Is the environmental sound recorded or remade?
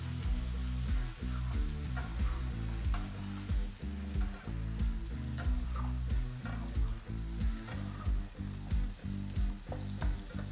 recorded